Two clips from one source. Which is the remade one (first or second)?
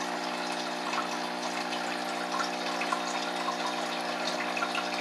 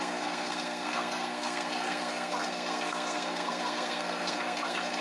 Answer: second